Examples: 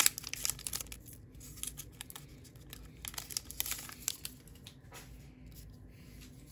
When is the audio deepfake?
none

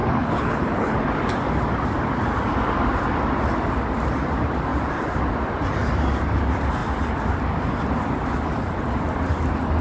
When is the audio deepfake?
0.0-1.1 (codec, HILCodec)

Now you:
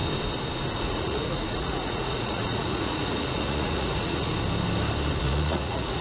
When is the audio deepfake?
0.8-4.3 (vocoder, Vocos); 5.2-6.0

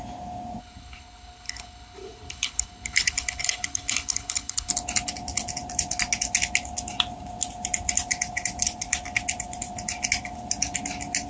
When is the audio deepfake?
0.6-4.7 (codec, HILCodec)

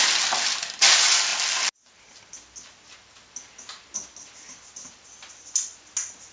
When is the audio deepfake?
none

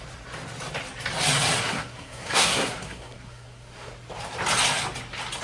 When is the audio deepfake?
1.6-3.9 (codec, SNAC)

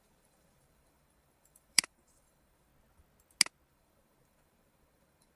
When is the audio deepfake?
0.0-2.7 (vocoder, BigVGAN v2); 3.7-5.4